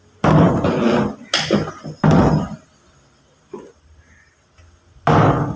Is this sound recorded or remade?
recorded